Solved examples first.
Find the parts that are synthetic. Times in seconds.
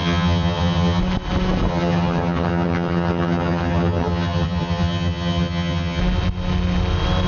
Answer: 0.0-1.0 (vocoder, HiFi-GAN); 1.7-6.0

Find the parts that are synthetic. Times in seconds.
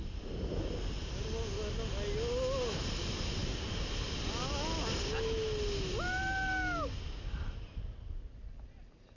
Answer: none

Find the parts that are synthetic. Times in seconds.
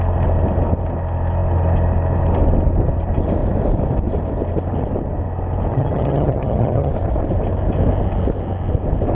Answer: 5.7-6.9 (vocoder, HiFi-GAN)